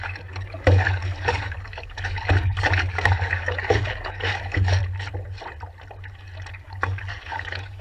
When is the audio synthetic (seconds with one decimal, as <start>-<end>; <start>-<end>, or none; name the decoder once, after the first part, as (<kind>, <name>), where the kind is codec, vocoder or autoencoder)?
0.0-4.8 (codec, DAC); 6.5-7.8